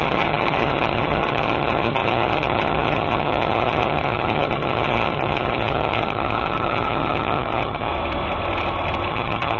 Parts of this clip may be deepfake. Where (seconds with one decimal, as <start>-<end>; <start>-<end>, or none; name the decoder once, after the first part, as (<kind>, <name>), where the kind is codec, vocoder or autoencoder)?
0.0-7.9 (vocoder, HiFi-GAN); 9.1-9.6